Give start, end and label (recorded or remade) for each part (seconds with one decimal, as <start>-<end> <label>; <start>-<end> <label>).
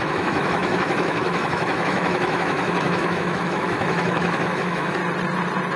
0.0-5.0 remade; 5.0-5.8 recorded